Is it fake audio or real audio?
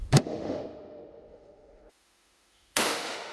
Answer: fake